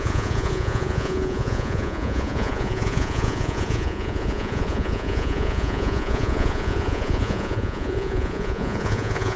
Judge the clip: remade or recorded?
remade